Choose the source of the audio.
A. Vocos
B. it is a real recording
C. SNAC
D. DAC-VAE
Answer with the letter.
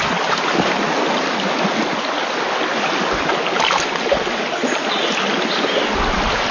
B